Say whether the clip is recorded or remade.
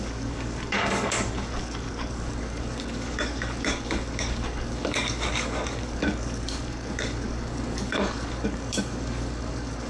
remade